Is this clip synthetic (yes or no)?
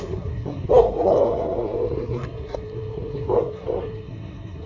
yes